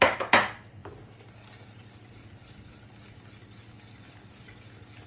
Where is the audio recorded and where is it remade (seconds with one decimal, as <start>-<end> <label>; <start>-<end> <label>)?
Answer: 0.0-5.1 recorded